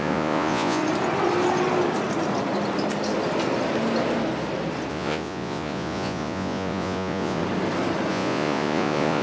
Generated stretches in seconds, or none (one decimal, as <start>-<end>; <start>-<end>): 0.0-0.8; 4.9-7.4; 8.1-9.2